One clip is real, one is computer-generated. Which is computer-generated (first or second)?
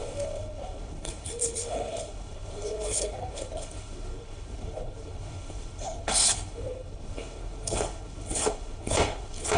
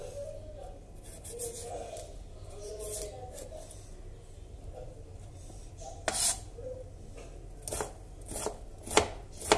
first